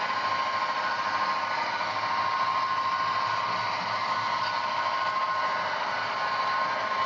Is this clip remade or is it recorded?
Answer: recorded